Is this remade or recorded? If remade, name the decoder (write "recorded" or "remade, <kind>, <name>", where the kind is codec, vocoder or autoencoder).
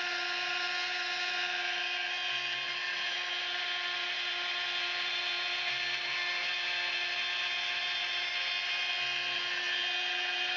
recorded